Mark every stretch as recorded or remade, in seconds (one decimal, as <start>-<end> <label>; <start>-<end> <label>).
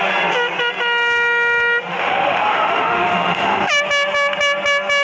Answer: 0.0-1.9 recorded; 1.9-3.7 remade; 3.7-5.0 recorded